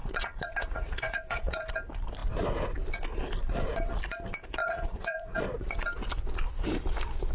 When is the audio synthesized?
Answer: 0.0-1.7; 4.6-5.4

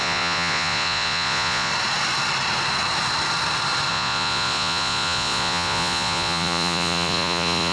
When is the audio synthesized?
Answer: 0.0-1.7; 3.9-7.7

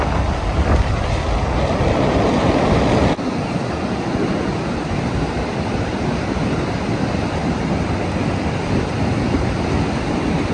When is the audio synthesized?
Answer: 7.4-9.1

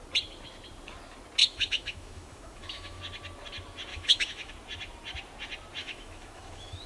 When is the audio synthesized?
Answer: 1.4-3.0; 3.9-4.5; 5.8-6.9

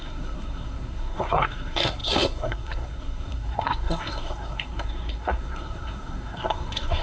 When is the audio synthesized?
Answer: 0.0-7.0

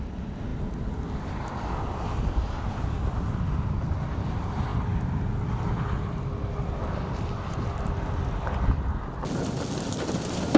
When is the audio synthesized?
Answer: 0.5-2.2